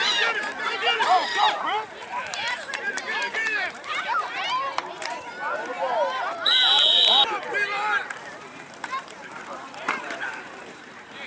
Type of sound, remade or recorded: remade